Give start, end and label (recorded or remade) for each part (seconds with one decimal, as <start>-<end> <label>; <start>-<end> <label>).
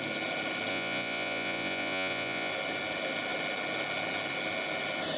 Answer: 0.0-0.7 recorded; 0.7-2.5 remade; 2.5-5.2 recorded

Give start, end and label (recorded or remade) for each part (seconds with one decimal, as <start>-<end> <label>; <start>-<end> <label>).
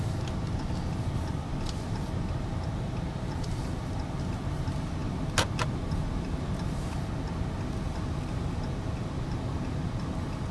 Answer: 0.0-10.5 recorded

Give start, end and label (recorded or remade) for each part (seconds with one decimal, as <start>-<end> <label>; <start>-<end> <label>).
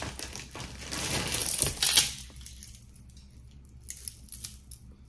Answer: 0.0-5.1 recorded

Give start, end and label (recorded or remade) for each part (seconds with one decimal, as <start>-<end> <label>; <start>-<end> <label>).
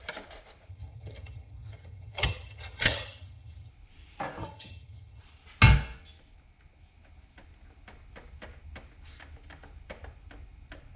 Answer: 0.0-0.7 recorded; 0.7-3.7 remade; 3.7-4.4 recorded; 4.4-5.2 remade; 5.2-11.0 recorded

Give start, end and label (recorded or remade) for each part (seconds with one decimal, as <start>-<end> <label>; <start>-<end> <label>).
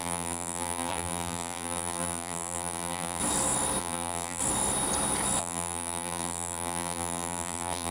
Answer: 0.0-3.2 remade; 3.2-3.8 recorded; 3.8-4.4 remade; 4.4-5.4 recorded; 5.4-7.9 remade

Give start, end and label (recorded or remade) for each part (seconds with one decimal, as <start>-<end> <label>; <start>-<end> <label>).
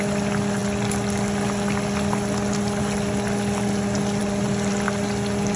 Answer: 0.0-5.6 recorded